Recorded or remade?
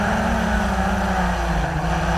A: recorded